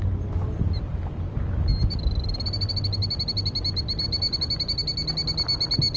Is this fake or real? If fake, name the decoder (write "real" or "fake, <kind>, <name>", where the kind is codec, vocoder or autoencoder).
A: real